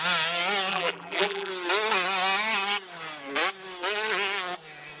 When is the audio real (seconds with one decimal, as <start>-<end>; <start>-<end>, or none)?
0.0-0.7; 1.5-5.0